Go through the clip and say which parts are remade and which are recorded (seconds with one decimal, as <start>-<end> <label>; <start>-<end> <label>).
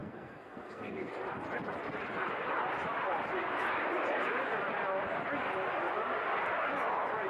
0.0-1.1 remade; 1.1-7.3 recorded